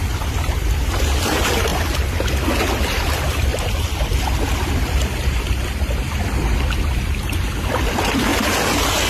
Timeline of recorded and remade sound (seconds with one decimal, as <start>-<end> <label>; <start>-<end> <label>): 0.0-1.7 remade; 1.7-2.8 recorded; 2.8-8.3 remade; 8.3-9.1 recorded